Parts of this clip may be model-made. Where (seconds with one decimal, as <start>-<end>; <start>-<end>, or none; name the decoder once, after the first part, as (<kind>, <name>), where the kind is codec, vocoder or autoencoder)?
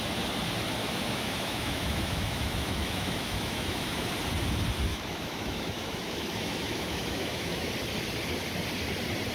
0.8-4.1 (autoencoder, DAC-VAE); 4.9-7.7